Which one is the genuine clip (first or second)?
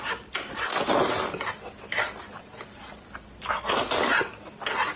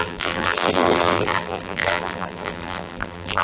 first